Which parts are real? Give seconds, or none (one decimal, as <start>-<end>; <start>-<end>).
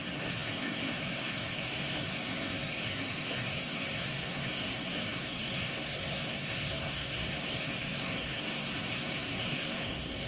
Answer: none